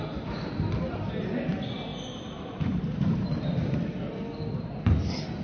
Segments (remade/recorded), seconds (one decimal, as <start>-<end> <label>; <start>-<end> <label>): 0.0-1.9 recorded; 1.9-2.8 remade; 2.8-5.4 recorded